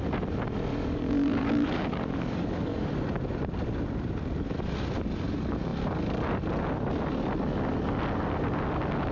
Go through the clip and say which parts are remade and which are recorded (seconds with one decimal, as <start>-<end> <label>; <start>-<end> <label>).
0.0-0.7 recorded; 0.7-2.9 remade; 2.9-9.1 recorded